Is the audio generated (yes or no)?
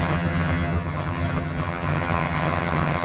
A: yes